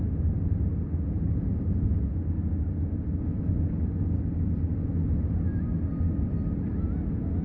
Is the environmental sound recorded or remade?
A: recorded